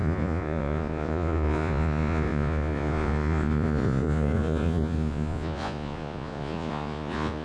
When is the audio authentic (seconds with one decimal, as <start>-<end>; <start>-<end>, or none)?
none